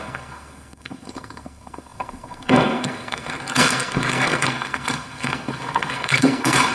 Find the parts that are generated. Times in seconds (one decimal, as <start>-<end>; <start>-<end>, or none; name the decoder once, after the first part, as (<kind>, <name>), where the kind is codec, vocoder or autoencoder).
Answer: 0.0-6.7 (codec, SNAC)